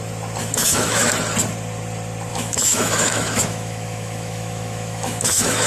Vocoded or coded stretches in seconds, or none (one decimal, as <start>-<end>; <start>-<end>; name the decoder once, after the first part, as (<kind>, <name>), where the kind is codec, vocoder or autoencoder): 0.4-1.1 (autoencoder, DAC-VAE); 2.3-5.7